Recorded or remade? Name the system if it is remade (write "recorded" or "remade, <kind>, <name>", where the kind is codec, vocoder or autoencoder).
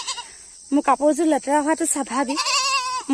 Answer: recorded